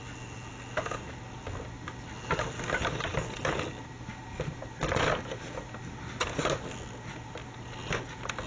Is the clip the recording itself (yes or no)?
yes